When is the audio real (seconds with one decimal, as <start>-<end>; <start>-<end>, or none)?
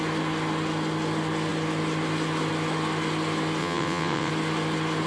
0.0-3.6; 4.3-5.1